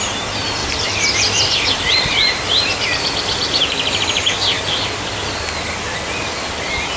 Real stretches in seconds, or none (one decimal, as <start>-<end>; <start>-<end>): 0.0-0.6; 3.6-7.0